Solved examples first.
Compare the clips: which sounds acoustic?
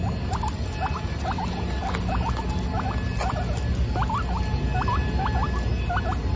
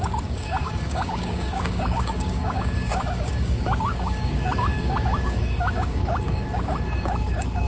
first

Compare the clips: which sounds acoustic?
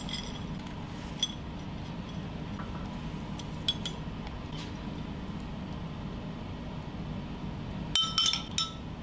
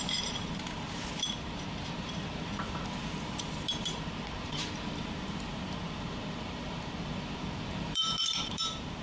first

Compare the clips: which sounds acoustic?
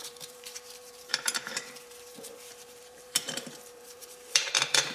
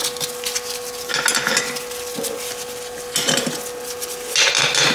second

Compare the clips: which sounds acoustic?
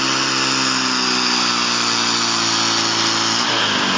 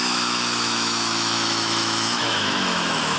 first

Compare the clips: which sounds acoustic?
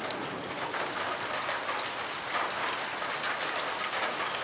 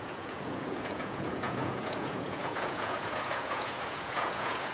first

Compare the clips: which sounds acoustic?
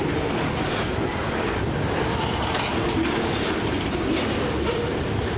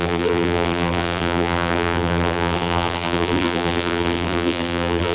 first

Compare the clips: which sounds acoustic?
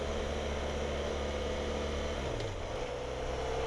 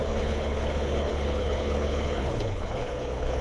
first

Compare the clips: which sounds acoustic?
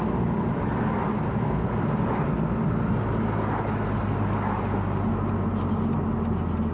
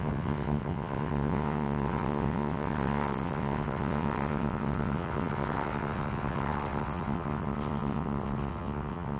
first